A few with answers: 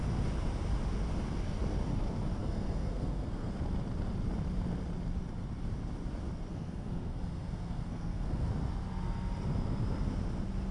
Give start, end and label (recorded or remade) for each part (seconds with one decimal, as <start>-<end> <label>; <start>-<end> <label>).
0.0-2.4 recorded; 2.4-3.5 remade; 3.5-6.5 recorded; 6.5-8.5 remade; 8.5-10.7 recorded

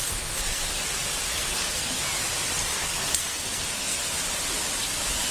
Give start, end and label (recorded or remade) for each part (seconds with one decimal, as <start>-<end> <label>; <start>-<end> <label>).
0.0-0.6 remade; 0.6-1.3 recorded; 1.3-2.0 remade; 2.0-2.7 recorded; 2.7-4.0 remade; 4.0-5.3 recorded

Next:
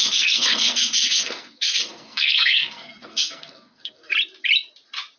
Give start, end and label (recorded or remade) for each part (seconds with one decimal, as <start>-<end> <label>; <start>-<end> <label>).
0.0-4.1 remade; 4.1-5.2 recorded

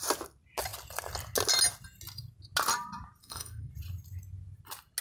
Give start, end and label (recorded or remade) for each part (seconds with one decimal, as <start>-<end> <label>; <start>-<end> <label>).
0.0-3.2 recorded; 3.2-3.7 remade; 3.7-5.0 recorded

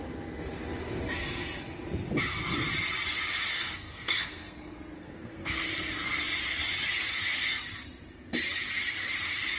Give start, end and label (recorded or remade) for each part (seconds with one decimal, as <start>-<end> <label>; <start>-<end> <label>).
0.0-3.5 recorded; 3.5-5.7 remade; 5.7-9.6 recorded

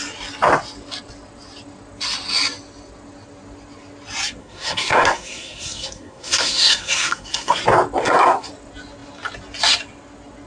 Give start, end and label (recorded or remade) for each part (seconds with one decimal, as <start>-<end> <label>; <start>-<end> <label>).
0.0-4.4 recorded; 4.4-7.6 remade; 7.6-8.0 recorded; 8.0-8.5 remade; 8.5-10.5 recorded

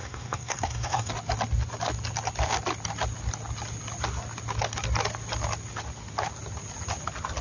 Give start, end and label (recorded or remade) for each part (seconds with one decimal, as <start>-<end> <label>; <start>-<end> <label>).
0.0-1.1 remade; 1.1-7.4 recorded